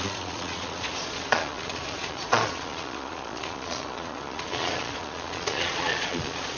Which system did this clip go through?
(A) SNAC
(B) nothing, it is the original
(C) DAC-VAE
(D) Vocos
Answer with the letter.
D